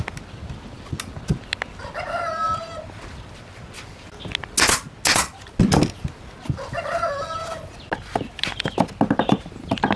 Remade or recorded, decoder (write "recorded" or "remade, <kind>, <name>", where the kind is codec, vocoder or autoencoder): recorded